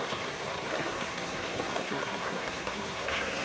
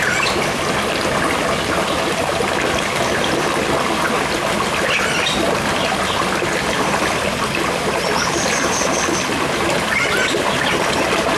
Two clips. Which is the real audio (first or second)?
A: second